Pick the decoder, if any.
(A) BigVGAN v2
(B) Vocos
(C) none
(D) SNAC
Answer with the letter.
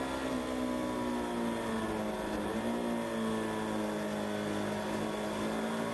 C